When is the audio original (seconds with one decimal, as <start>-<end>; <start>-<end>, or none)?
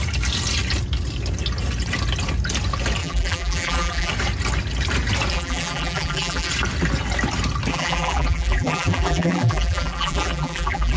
0.0-3.0; 4.1-5.3; 6.5-7.7